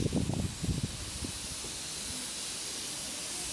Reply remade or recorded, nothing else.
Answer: recorded